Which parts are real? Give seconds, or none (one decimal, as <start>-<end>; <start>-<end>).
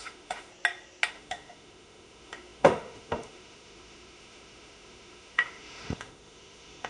0.5-1.1